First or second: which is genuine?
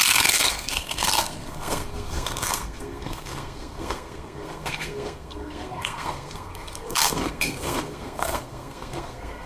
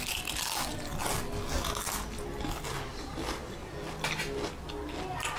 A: second